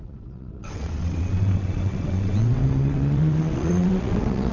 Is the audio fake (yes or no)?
yes